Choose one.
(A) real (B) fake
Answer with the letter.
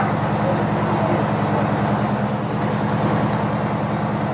A